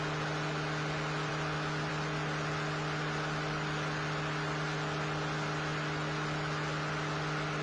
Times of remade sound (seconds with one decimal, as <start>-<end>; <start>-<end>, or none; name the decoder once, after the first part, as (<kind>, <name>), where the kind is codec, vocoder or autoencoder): none